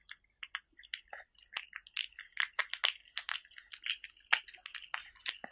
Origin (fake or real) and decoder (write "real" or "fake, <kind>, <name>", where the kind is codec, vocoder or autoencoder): real